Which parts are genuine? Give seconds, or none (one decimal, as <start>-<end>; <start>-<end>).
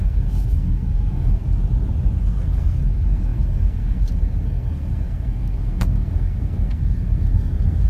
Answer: 1.4-2.2